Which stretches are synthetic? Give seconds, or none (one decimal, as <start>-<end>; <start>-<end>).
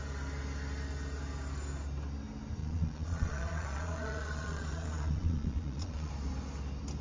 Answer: 2.6-6.1